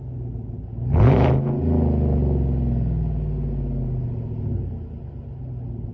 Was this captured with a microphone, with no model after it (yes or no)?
yes